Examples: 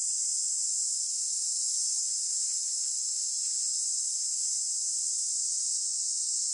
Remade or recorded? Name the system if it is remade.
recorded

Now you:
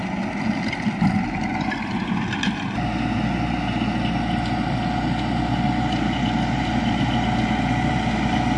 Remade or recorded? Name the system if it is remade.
recorded